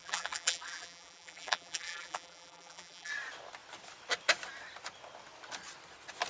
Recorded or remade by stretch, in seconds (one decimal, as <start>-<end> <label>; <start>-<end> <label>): 0.0-3.1 remade; 3.1-6.3 recorded